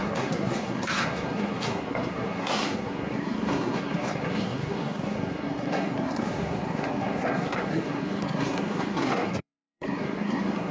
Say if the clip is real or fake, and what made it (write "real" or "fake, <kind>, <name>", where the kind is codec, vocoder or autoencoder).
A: fake, codec, SNAC